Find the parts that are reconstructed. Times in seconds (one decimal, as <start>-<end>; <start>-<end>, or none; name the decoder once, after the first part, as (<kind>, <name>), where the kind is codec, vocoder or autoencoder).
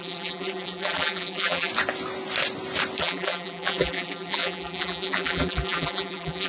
0.0-1.7 (vocoder, BigVGAN v2); 3.0-6.5